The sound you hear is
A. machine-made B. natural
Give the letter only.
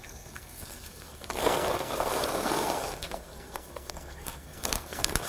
A